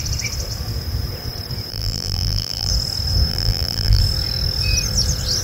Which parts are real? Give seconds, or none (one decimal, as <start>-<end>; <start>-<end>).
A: 0.0-1.7; 2.7-3.3; 4.0-5.4